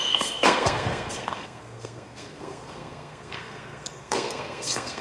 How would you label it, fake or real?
fake